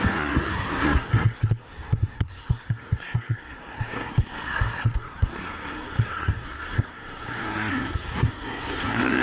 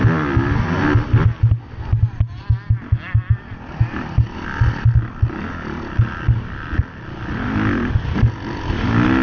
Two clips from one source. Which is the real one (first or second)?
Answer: second